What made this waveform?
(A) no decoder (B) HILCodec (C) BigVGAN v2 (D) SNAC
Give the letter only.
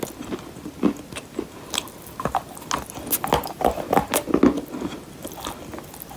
A